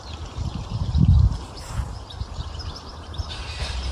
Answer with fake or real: fake